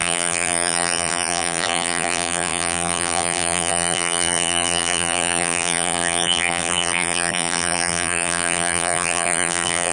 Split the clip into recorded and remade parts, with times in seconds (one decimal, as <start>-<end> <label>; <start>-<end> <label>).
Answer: 0.0-9.9 remade